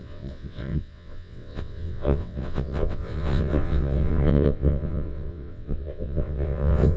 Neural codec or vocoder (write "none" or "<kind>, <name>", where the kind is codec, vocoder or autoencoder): vocoder, WaveNeXt